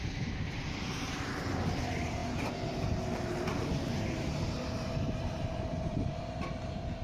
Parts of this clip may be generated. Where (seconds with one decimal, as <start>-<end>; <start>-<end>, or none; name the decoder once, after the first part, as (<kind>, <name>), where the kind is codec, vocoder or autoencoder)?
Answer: 0.0-7.0 (vocoder, BigVGAN v2)